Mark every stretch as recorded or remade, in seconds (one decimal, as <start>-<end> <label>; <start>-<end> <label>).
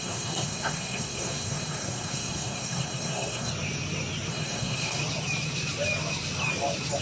0.0-3.5 remade; 3.5-4.3 recorded; 4.3-5.0 remade; 5.0-7.0 recorded